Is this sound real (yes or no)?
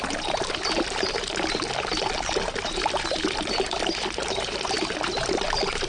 yes